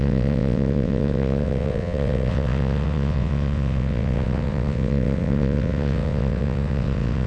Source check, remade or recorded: remade